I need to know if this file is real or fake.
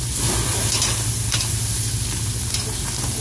real